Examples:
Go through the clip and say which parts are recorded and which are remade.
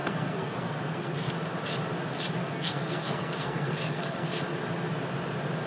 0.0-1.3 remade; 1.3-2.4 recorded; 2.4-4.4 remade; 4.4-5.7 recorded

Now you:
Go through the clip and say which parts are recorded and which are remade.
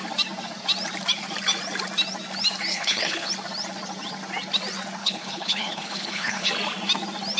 0.0-2.7 recorded; 2.7-3.3 remade; 3.3-5.0 recorded; 5.0-6.5 remade; 6.5-7.4 recorded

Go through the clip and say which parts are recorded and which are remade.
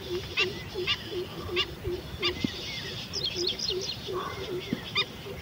0.0-5.4 recorded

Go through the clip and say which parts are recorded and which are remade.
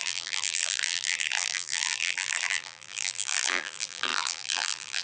0.0-5.0 remade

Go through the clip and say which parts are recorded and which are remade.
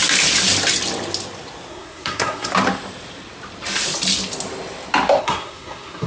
0.0-1.7 recorded; 1.7-2.5 remade; 2.5-5.2 recorded; 5.2-6.1 remade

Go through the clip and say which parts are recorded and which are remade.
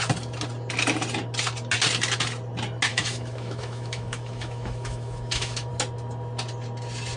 0.0-2.9 recorded; 2.9-5.7 remade; 5.7-7.2 recorded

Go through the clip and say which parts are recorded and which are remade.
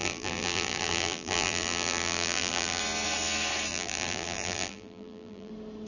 0.0-2.8 remade; 2.8-3.7 recorded; 3.7-5.5 remade; 5.5-5.9 recorded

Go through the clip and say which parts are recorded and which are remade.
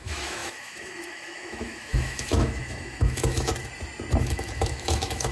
0.0-3.5 remade; 3.5-4.2 recorded; 4.2-5.3 remade